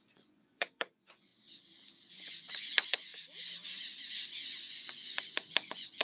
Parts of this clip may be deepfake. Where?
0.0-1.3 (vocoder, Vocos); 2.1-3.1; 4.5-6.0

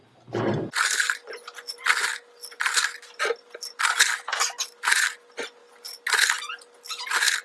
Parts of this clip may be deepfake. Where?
none

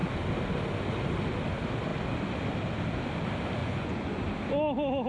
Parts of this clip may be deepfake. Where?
3.6-4.2 (vocoder, Vocos)